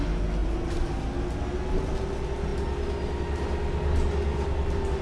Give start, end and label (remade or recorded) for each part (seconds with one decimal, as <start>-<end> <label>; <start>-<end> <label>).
0.0-5.0 recorded

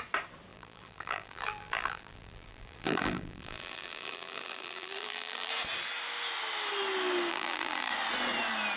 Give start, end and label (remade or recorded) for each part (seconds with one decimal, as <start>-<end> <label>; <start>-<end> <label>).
0.0-0.5 recorded; 0.5-5.5 remade; 5.5-7.3 recorded; 7.3-7.9 remade; 7.9-8.8 recorded

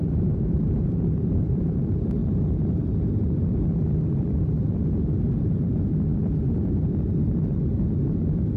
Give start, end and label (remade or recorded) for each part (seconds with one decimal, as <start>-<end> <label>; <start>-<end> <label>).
0.0-1.6 remade; 1.6-8.6 recorded

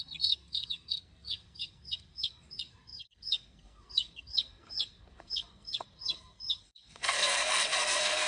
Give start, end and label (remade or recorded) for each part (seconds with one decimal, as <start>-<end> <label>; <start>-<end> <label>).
0.0-8.3 remade

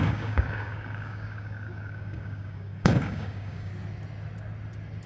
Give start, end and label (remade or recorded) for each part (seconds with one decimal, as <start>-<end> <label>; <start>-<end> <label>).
0.0-3.7 remade; 3.7-5.1 recorded

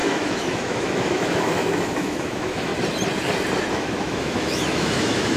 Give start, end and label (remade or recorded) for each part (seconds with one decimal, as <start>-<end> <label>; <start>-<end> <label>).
0.0-2.7 remade; 2.7-3.7 recorded; 3.7-5.4 remade